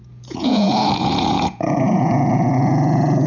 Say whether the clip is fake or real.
fake